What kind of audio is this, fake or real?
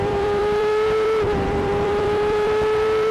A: fake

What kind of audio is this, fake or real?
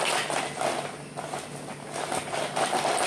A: real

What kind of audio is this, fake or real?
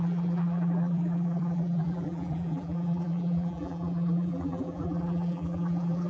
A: fake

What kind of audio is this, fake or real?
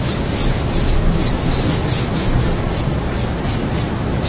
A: real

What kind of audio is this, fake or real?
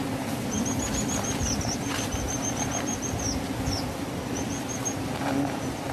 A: real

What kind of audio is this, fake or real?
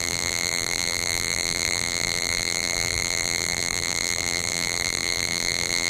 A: fake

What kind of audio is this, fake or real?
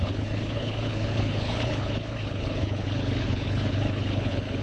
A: fake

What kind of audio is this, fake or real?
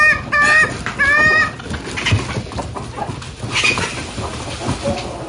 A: real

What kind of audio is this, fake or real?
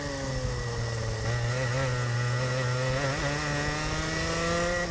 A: real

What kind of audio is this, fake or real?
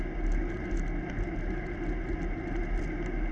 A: real